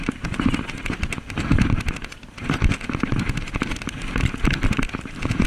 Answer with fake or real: real